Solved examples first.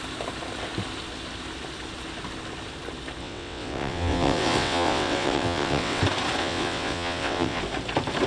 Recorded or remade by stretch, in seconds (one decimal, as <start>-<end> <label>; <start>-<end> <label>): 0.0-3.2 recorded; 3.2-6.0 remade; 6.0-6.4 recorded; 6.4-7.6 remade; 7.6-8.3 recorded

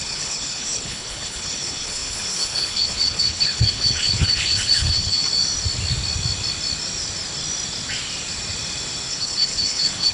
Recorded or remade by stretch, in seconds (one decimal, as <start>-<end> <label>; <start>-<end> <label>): 0.0-5.3 remade; 5.3-9.1 recorded; 9.1-10.1 remade

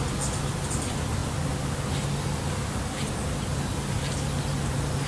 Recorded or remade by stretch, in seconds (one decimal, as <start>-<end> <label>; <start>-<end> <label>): 0.0-5.1 recorded